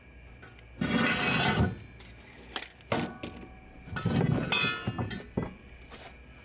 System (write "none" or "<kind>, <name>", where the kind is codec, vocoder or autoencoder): none